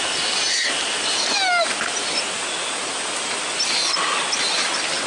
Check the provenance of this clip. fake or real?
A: real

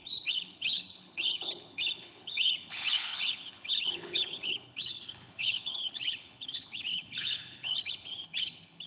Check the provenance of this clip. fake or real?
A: fake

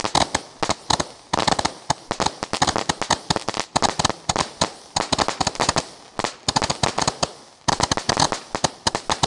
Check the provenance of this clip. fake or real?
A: real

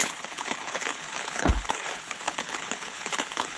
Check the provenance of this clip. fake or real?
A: fake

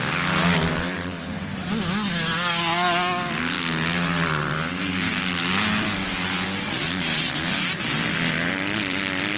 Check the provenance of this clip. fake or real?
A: real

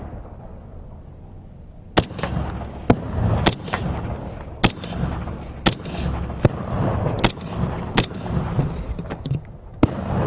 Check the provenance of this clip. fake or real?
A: real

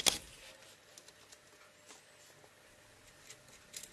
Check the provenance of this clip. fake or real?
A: real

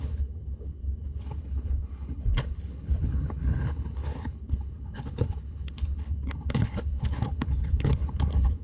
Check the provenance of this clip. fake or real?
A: fake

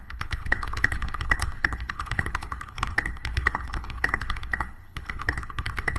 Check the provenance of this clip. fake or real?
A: fake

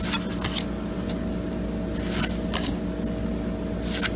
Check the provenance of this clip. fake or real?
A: real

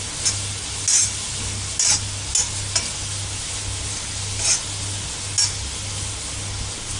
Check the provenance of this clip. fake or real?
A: real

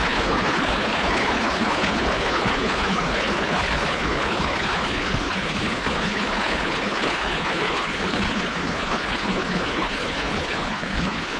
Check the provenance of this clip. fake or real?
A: fake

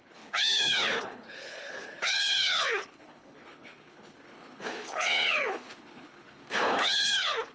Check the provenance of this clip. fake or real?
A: fake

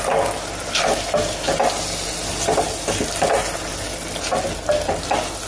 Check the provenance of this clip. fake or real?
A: real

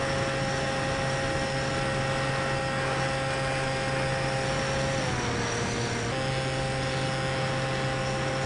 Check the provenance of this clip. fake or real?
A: real